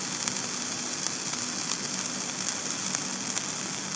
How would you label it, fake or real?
real